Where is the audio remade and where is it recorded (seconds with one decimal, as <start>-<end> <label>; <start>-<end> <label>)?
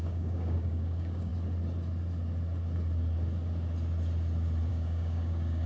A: 0.0-1.3 remade; 1.3-4.7 recorded; 4.7-5.7 remade